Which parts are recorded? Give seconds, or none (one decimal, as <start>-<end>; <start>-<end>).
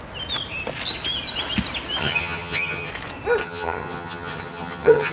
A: 0.0-2.0; 2.9-3.4